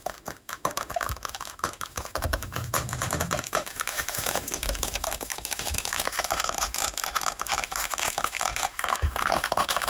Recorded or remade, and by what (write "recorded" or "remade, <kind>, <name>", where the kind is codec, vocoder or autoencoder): remade, autoencoder, DAC-VAE